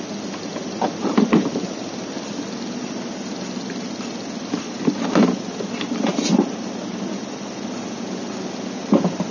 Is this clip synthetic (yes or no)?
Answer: no